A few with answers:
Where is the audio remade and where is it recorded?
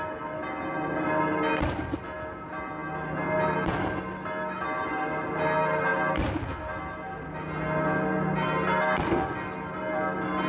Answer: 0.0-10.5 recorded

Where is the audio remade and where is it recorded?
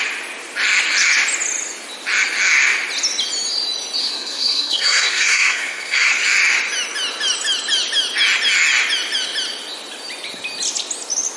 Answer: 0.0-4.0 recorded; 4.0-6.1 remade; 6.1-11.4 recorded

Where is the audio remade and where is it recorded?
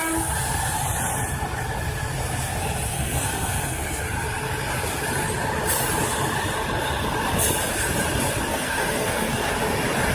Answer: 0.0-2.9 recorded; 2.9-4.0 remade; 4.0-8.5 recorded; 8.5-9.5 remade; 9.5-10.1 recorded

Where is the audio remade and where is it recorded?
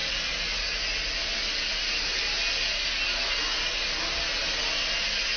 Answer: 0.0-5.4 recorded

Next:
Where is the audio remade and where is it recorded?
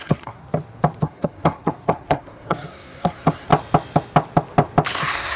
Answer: 0.0-0.4 remade; 0.4-1.0 recorded; 1.0-3.5 remade; 3.5-4.9 recorded; 4.9-5.4 remade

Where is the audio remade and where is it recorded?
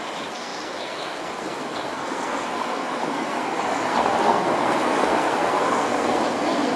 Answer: 0.0-6.8 remade